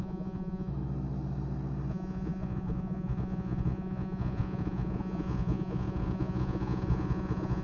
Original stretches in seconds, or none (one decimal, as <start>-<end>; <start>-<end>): 0.7-1.9